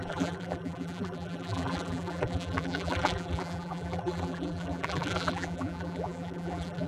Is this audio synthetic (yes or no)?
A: yes